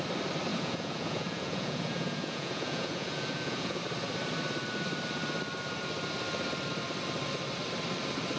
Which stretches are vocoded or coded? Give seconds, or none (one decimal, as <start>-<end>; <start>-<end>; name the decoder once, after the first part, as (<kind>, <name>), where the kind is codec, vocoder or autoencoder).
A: 0.5-3.8 (vocoder, Vocos)